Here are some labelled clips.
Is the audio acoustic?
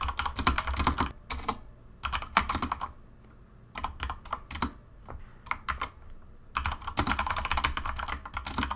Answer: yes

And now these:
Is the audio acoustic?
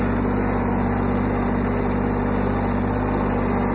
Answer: yes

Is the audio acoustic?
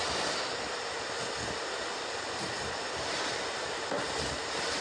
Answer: yes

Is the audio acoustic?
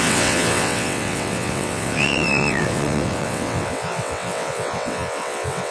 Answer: no